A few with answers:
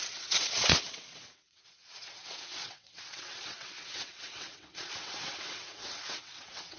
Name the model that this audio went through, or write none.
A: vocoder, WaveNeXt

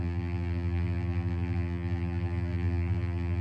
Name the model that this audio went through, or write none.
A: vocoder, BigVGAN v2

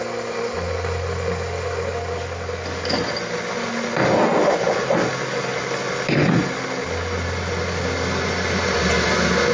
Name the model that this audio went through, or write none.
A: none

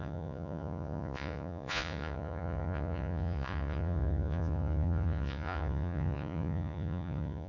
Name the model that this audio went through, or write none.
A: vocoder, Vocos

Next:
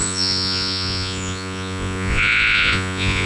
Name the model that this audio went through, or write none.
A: vocoder, Vocos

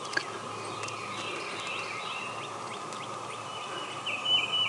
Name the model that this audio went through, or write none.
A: none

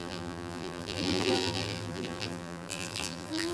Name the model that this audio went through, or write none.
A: vocoder, BigVGAN v2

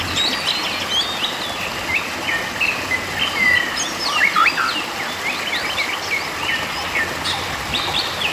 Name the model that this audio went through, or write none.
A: none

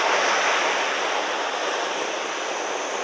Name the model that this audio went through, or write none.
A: none